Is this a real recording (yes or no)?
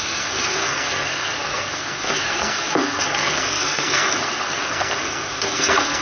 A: no